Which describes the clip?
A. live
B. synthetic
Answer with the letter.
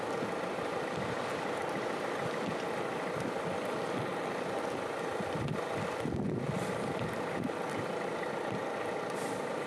A